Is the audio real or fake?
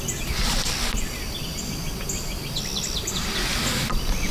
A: real